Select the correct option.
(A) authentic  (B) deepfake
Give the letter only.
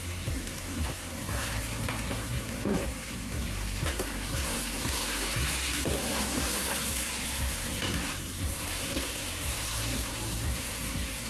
B